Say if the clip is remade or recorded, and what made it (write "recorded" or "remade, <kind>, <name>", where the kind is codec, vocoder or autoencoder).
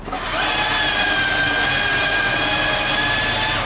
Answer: recorded